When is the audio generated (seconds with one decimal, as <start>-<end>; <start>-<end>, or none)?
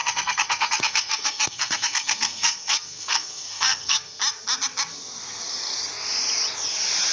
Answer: 0.0-4.2